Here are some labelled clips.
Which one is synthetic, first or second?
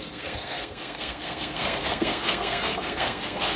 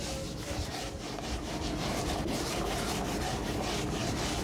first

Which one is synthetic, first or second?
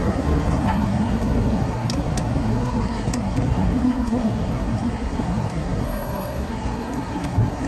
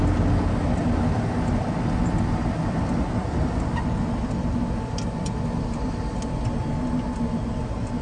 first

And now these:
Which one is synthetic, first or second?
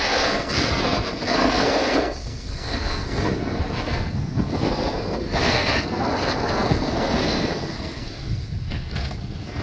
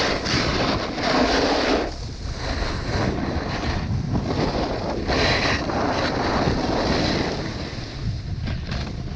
first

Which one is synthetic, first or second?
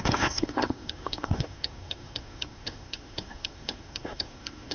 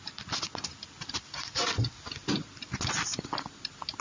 first